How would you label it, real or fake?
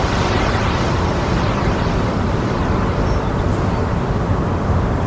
real